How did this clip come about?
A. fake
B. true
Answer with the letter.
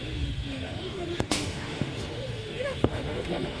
A